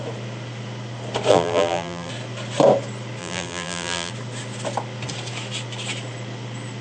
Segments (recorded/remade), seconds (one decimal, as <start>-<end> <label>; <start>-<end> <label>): 0.0-1.3 recorded; 1.3-2.1 remade; 2.1-3.2 recorded; 3.2-4.1 remade; 4.1-6.8 recorded